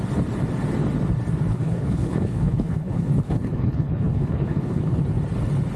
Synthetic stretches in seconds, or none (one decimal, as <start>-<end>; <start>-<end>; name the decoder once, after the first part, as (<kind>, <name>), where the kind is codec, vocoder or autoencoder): 1.5-5.0 (codec, HILCodec)